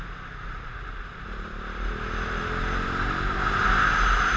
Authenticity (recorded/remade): recorded